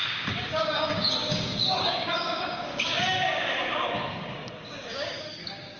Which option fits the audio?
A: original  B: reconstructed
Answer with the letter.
B